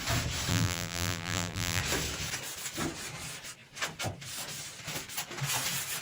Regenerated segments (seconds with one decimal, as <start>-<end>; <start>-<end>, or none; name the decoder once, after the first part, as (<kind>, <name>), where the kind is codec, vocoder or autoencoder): 0.5-1.8 (vocoder, BigVGAN v2)